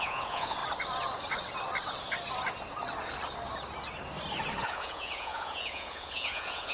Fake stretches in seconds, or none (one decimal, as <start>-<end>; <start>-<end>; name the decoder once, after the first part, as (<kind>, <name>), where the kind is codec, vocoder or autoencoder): 0.0-0.6 (vocoder, Vocos); 4.6-6.7